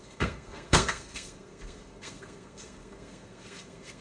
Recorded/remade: remade